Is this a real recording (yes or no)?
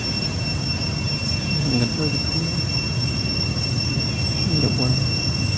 yes